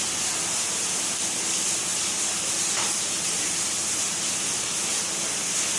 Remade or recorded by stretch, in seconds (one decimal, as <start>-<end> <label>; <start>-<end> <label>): 0.0-1.9 recorded; 1.9-4.9 remade; 4.9-5.8 recorded